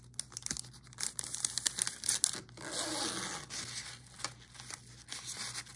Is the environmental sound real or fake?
real